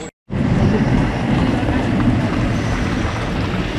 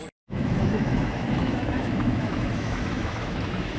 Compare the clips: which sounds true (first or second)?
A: first